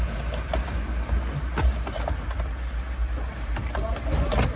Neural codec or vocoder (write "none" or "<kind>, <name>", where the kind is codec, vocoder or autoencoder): none